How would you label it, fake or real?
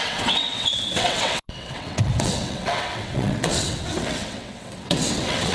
fake